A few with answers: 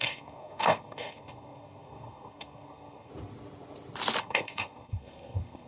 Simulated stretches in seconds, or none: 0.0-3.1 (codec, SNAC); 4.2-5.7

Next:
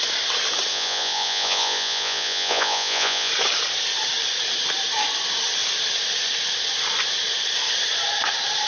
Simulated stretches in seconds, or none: 0.7-3.3 (vocoder, Vocos)

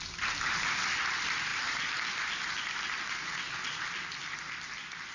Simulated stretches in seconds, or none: none

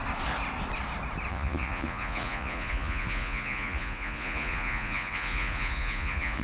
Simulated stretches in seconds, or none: 1.3-6.4 (vocoder, Vocos)

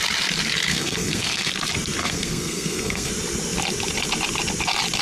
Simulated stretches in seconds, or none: 0.7-1.5 (codec, SNAC); 2.0-3.1

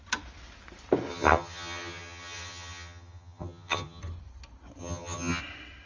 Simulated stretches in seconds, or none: 1.1-4.0 (vocoder, HiFi-GAN); 4.8-5.4